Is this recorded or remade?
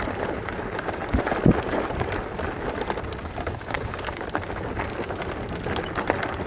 recorded